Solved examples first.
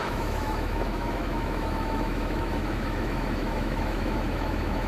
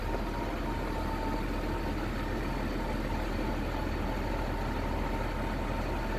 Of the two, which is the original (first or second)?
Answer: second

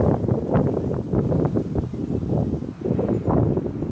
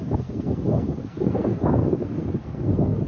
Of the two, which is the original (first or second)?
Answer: first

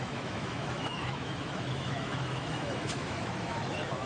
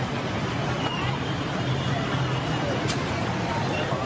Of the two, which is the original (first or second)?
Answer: second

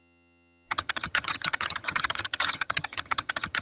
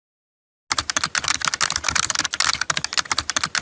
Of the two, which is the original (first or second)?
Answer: second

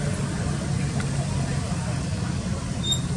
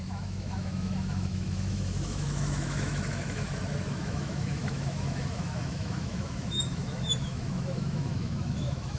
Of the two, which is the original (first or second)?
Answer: first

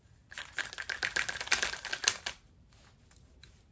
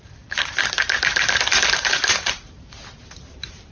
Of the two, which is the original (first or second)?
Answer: first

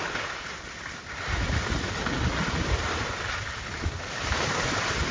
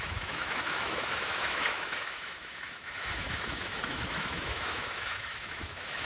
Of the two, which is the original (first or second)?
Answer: first